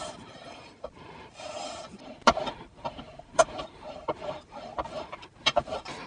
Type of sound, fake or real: fake